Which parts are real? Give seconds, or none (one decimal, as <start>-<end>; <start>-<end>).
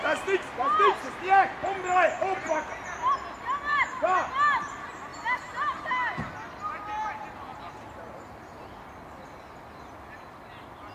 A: 0.0-10.9